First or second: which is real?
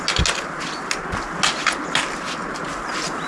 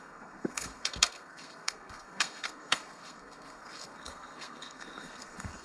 first